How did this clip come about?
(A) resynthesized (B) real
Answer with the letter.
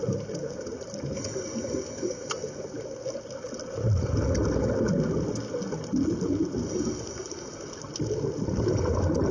B